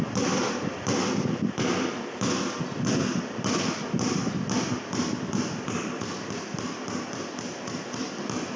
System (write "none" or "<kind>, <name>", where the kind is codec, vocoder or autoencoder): vocoder, BigVGAN v2